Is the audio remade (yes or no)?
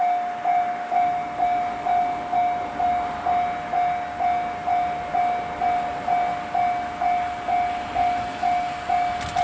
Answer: no